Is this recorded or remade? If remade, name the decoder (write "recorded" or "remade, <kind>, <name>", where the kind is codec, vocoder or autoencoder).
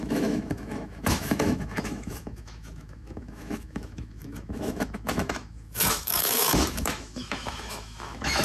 remade, autoencoder, DAC-VAE